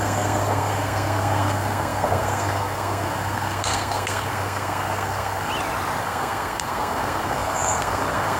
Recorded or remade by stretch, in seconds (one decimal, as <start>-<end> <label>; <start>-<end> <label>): 0.0-5.5 remade; 5.5-6.0 recorded; 6.0-8.4 remade